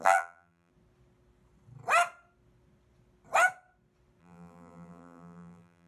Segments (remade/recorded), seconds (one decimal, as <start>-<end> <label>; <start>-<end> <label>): 0.0-0.7 remade; 0.7-4.2 recorded; 4.2-5.9 remade

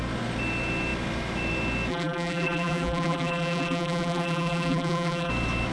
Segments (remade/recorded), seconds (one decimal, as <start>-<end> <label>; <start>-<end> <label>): 0.0-1.9 recorded; 1.9-5.3 remade; 5.3-5.7 recorded

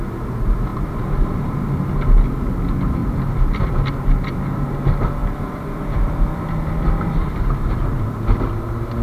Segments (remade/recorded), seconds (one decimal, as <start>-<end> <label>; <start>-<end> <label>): 0.0-0.7 recorded; 0.7-1.9 remade; 1.9-3.0 recorded; 3.0-3.7 remade; 3.7-5.2 recorded; 5.2-8.4 remade; 8.4-9.0 recorded

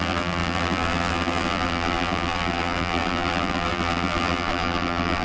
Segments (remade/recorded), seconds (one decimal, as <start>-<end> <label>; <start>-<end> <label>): 0.0-5.2 remade

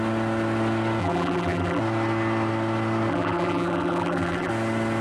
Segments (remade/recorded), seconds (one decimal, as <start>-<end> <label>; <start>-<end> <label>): 0.0-1.0 recorded; 1.0-1.8 remade; 1.8-3.1 recorded; 3.1-4.5 remade; 4.5-5.0 recorded

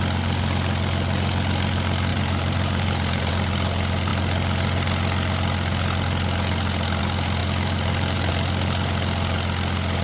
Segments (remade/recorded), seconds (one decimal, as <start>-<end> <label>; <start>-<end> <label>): 0.0-2.1 recorded; 2.1-3.3 remade; 3.3-7.4 recorded; 7.4-8.3 remade; 8.3-10.0 recorded